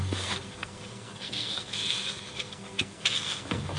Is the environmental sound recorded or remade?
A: remade